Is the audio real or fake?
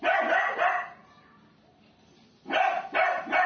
real